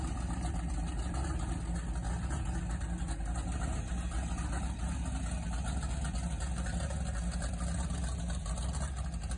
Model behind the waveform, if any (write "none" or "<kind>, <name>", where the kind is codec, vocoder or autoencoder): none